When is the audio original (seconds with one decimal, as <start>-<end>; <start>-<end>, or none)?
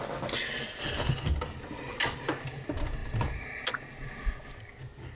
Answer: 0.0-5.2